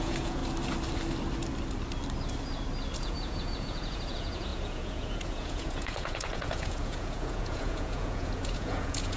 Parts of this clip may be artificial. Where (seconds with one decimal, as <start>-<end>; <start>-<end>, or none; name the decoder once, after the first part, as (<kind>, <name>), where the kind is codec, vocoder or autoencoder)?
0.0-0.4 (vocoder, Vocos); 3.0-9.2